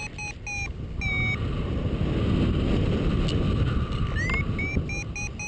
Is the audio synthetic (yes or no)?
no